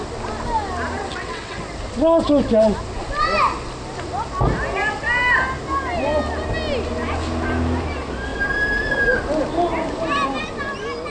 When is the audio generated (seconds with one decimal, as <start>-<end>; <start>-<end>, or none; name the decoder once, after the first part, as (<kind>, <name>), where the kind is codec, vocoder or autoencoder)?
1.0-1.6 (vocoder, WaveNeXt)